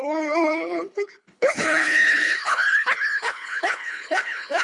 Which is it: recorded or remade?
remade